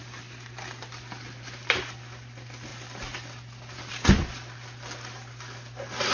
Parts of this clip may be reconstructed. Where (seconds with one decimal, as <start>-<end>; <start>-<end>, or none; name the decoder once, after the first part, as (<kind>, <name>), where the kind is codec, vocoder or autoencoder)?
none